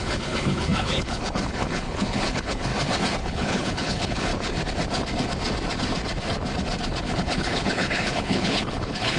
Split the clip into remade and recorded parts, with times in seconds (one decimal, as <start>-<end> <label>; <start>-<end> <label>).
0.0-2.7 remade; 2.7-3.2 recorded; 3.2-4.3 remade; 4.3-7.0 recorded; 7.0-9.2 remade